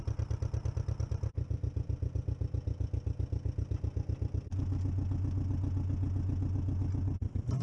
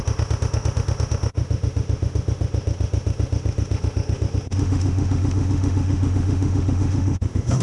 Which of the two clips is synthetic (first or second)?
second